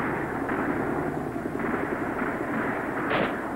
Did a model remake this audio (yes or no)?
no